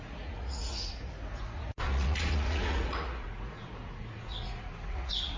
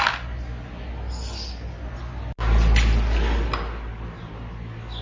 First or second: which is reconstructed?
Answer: first